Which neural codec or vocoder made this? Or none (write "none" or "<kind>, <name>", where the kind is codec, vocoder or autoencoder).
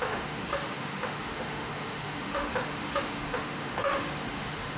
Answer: autoencoder, DAC-VAE